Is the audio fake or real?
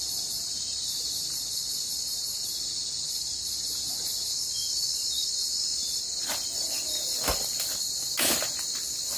real